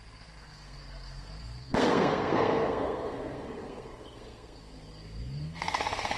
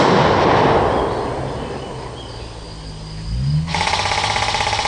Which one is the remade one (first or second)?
first